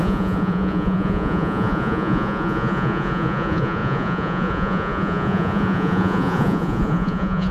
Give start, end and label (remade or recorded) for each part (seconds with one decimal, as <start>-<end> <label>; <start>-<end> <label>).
0.0-7.5 remade